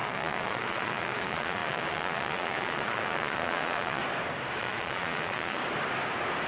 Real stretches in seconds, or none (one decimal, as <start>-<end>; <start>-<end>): 4.0-4.6; 5.6-6.5